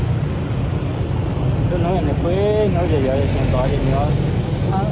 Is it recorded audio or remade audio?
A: recorded